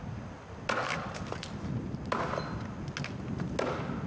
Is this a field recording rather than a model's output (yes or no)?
yes